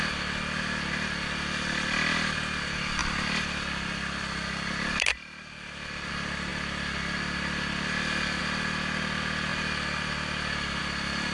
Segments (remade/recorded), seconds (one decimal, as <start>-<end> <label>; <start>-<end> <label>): 0.0-11.3 recorded